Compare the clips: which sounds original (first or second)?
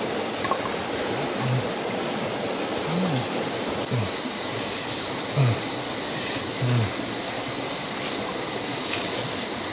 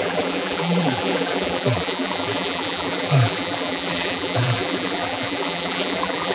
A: first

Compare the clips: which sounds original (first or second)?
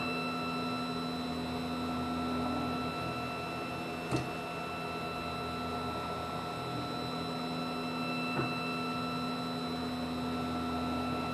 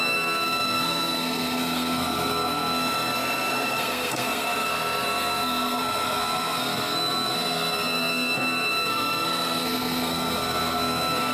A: first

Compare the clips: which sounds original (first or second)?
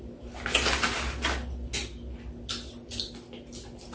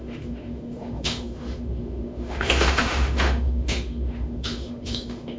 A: first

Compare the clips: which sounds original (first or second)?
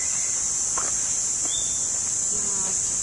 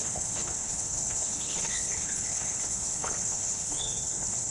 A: first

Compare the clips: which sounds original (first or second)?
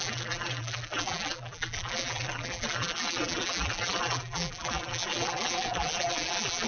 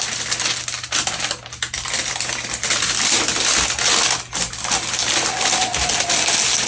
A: second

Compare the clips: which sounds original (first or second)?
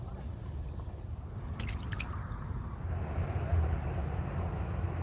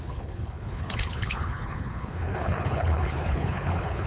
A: first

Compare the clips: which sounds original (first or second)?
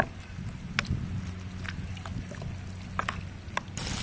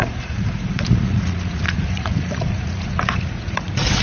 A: first